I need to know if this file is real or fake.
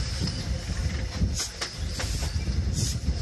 real